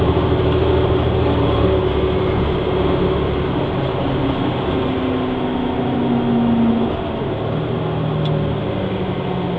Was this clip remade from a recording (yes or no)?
no